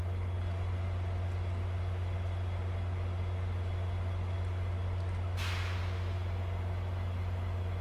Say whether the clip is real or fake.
real